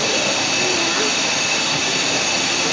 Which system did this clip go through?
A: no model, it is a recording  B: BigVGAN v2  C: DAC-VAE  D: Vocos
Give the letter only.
A